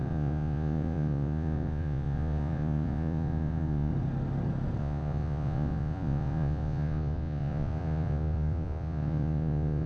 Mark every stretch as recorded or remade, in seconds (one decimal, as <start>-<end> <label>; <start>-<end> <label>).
0.0-3.9 remade; 3.9-4.8 recorded; 4.8-9.9 remade